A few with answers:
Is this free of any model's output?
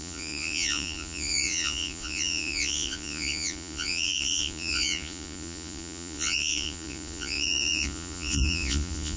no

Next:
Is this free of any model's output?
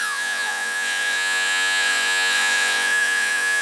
no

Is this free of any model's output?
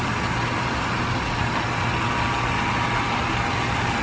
yes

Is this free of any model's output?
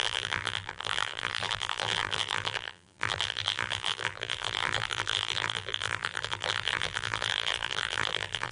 no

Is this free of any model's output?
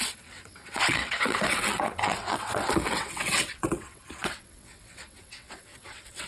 no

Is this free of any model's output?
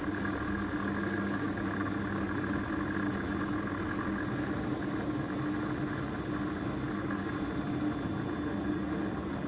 yes